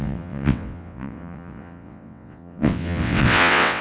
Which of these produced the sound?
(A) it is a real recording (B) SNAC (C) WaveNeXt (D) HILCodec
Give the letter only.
C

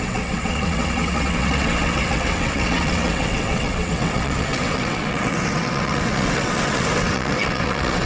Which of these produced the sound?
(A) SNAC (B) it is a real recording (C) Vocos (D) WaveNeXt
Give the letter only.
D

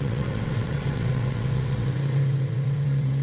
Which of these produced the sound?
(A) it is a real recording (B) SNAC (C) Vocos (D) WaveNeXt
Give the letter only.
D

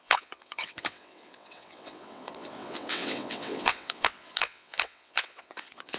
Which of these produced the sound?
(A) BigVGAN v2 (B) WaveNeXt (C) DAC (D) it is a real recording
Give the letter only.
B